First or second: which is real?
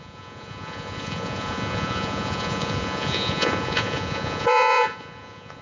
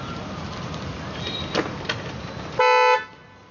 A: second